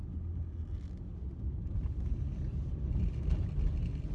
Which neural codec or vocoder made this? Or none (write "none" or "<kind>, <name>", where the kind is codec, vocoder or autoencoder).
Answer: none